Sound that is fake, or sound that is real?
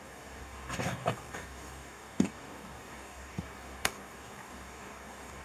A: fake